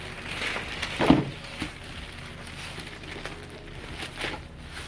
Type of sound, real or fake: real